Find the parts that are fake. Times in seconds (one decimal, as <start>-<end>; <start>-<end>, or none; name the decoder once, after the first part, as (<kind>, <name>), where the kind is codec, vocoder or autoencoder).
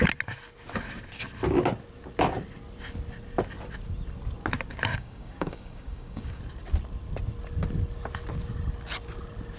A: 4.9-6.4 (codec, DAC)